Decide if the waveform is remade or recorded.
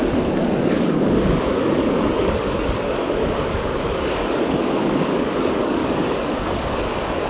remade